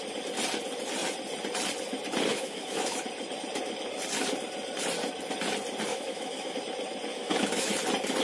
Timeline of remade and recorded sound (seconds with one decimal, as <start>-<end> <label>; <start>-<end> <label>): 0.0-2.3 recorded; 2.3-3.0 remade; 3.0-5.9 recorded; 5.9-6.6 remade; 6.6-7.1 recorded; 7.1-7.7 remade; 7.7-8.2 recorded